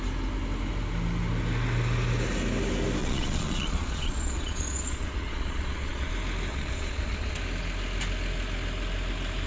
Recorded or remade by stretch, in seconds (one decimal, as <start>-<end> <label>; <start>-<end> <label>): 0.0-3.0 recorded; 3.0-6.1 remade; 6.1-6.5 recorded; 6.5-7.4 remade; 7.4-9.5 recorded